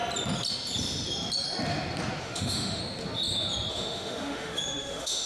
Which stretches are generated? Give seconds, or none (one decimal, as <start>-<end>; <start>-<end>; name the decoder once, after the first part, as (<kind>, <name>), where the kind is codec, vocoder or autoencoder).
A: 2.2-2.8 (autoencoder, DAC-VAE); 3.7-5.3